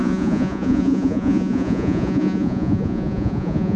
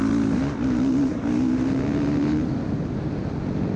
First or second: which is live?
second